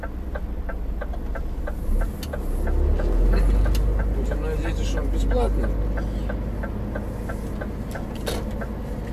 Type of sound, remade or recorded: recorded